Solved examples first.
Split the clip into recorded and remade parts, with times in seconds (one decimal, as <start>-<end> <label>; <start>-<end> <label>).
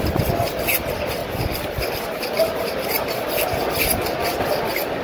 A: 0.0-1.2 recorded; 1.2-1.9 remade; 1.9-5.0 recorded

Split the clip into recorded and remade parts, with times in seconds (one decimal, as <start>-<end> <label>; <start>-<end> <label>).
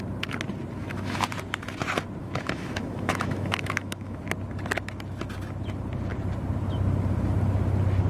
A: 0.0-0.8 recorded; 0.8-1.3 remade; 1.3-2.2 recorded; 2.2-4.2 remade; 4.2-8.1 recorded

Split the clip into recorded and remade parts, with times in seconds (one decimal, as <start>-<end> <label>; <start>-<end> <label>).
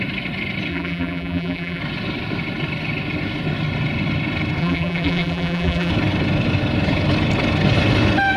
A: 0.0-0.7 recorded; 0.7-1.8 remade; 1.8-4.6 recorded; 4.6-5.9 remade; 5.9-8.4 recorded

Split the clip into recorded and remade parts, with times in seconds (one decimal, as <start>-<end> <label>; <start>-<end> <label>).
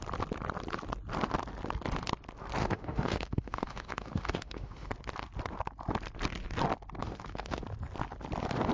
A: 0.0-2.6 recorded; 2.6-4.9 remade; 4.9-7.0 recorded; 7.0-7.6 remade; 7.6-8.7 recorded